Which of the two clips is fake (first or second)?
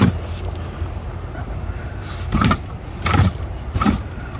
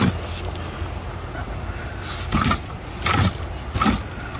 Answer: first